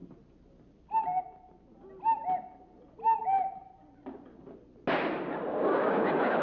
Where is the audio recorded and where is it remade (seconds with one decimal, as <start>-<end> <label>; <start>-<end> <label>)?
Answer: 0.0-5.5 recorded; 5.5-6.4 remade